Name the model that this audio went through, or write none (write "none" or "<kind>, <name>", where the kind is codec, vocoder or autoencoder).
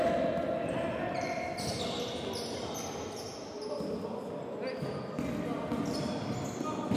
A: none